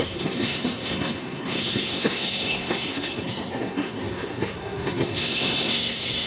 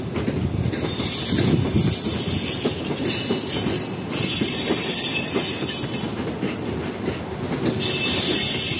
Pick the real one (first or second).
second